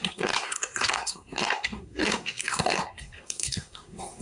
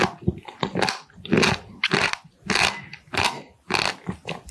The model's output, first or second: first